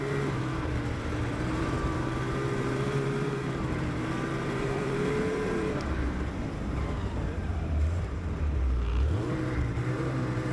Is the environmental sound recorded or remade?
remade